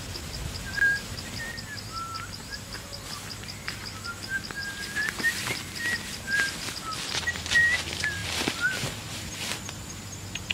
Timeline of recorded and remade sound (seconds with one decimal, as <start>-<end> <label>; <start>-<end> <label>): 0.0-10.5 recorded